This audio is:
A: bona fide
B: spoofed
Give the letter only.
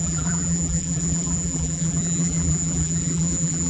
B